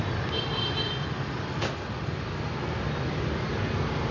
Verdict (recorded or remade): recorded